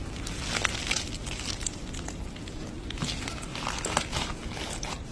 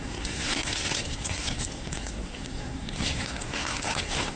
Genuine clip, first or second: first